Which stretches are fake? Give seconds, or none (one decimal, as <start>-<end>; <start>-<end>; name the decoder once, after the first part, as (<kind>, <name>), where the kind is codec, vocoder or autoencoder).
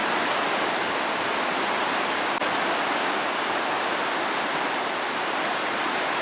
none